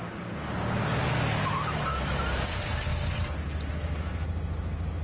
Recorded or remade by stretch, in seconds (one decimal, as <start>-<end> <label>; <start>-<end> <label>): 0.0-5.0 recorded